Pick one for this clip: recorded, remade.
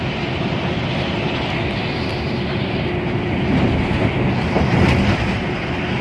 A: recorded